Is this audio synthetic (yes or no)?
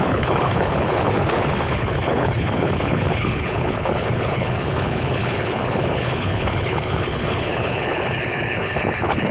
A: yes